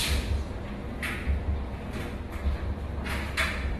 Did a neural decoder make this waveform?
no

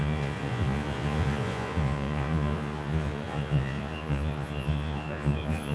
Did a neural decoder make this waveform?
yes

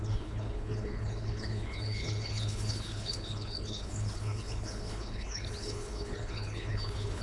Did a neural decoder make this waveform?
yes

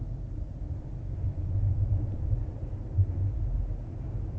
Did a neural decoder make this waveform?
no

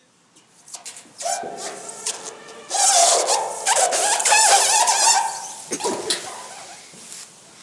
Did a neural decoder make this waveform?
no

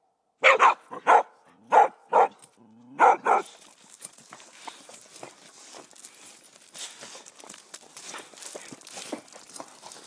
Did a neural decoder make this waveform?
no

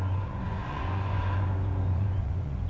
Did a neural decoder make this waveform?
yes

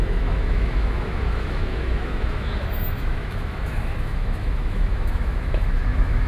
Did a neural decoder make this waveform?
yes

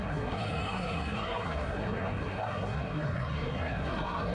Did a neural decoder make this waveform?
yes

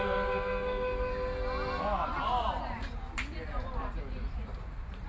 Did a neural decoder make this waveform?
no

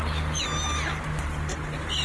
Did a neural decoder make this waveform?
no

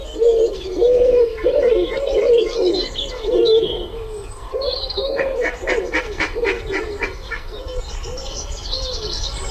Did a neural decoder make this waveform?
yes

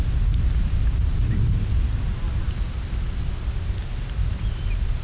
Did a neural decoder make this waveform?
no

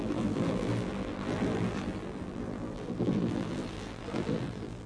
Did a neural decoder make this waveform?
yes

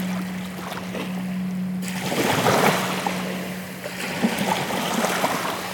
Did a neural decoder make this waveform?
no